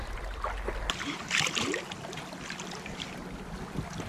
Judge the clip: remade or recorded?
recorded